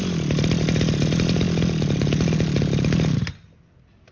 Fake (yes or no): no